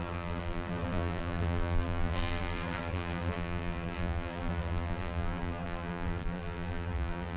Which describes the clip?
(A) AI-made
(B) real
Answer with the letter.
A